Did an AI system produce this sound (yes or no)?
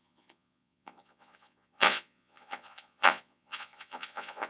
yes